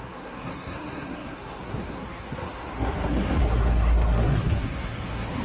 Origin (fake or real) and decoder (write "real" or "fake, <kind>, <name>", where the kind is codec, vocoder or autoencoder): fake, codec, SNAC